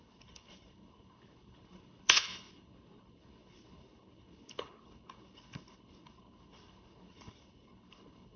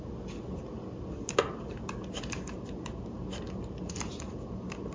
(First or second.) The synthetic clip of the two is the first